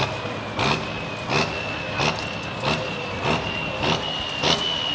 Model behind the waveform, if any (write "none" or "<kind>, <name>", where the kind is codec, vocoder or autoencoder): none